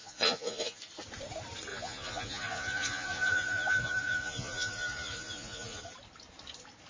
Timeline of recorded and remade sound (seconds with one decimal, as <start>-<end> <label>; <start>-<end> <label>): 0.0-0.8 remade; 0.8-1.7 recorded; 1.7-5.8 remade; 5.8-6.9 recorded